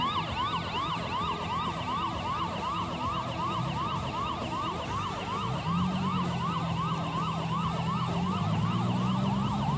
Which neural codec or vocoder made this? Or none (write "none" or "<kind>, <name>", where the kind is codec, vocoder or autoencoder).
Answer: none